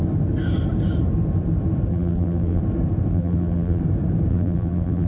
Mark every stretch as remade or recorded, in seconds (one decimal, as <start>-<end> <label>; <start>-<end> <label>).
0.0-1.9 recorded; 1.9-2.6 remade; 2.6-3.1 recorded; 3.1-3.8 remade; 3.8-4.3 recorded; 4.3-5.1 remade